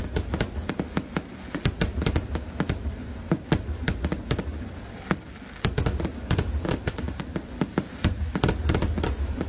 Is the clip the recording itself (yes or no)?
yes